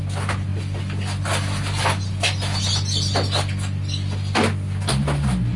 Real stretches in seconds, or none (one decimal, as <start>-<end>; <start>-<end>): 0.0-5.6